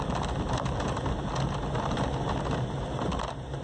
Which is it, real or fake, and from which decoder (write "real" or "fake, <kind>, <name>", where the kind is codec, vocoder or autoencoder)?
real